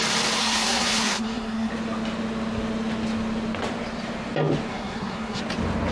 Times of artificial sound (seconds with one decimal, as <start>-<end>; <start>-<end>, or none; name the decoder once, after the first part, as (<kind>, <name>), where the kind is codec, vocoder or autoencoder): 0.4-1.7 (codec, SNAC); 4.7-5.4